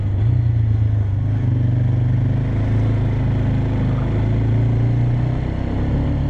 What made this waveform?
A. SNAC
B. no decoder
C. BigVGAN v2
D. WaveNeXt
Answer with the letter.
B